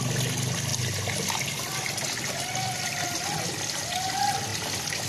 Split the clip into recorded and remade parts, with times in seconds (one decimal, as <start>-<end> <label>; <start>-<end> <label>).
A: 0.0-5.1 recorded

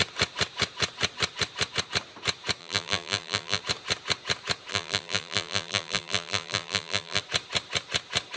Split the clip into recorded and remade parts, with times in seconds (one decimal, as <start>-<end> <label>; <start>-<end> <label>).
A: 0.0-2.6 recorded; 2.6-3.6 remade; 3.6-4.7 recorded; 4.7-7.2 remade; 7.2-8.4 recorded

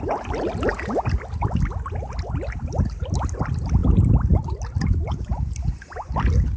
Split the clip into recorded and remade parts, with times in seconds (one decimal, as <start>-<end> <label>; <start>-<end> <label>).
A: 0.0-6.6 recorded

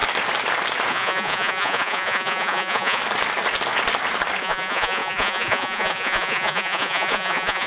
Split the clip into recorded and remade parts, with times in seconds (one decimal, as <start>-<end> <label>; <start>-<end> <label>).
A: 0.0-0.9 recorded; 0.9-3.0 remade; 3.0-4.4 recorded; 4.4-7.7 remade

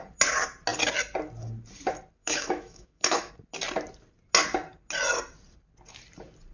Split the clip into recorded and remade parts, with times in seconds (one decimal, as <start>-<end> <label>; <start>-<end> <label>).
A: 0.0-2.2 recorded; 2.2-3.3 remade; 3.3-6.5 recorded

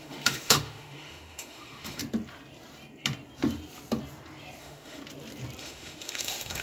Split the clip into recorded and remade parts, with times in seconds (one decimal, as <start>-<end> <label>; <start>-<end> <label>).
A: 0.0-2.0 remade; 2.0-4.6 recorded; 4.6-5.0 remade; 5.0-5.6 recorded; 5.6-6.6 remade

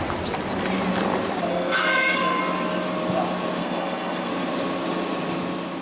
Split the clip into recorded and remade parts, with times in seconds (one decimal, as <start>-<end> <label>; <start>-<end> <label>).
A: 0.0-1.5 recorded; 1.5-2.4 remade; 2.4-3.6 recorded; 3.6-4.3 remade; 4.3-5.8 recorded

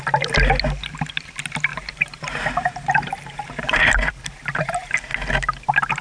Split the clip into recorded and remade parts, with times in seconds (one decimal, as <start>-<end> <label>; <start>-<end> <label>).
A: 0.0-1.7 recorded; 1.7-4.1 remade; 4.1-6.0 recorded